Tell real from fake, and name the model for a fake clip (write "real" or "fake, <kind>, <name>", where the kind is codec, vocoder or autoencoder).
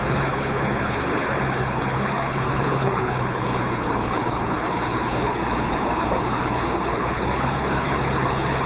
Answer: fake, codec, HILCodec